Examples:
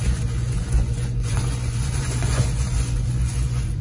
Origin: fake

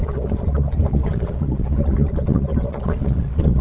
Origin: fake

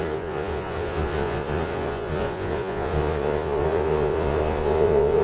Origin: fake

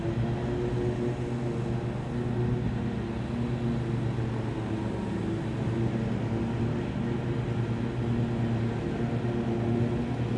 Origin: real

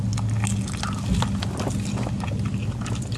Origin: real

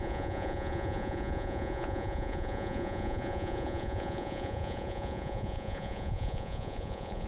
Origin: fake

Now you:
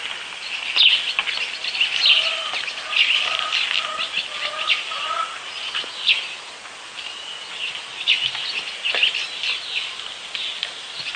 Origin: real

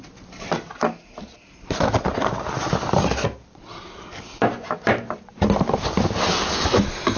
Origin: real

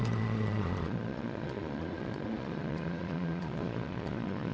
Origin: fake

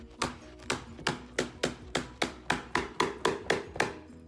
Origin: real